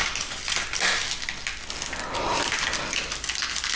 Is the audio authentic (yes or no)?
yes